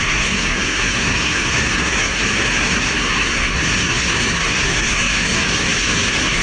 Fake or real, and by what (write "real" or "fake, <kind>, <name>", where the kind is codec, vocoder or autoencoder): fake, codec, SNAC